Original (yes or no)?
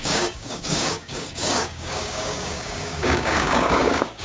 no